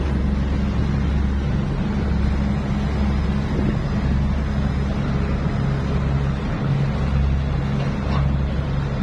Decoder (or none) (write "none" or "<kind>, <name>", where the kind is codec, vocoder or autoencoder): none